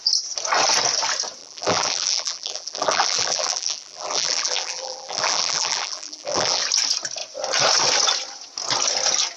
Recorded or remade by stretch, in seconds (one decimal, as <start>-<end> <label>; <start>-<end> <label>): 0.0-1.4 recorded; 1.4-6.6 remade; 6.6-9.4 recorded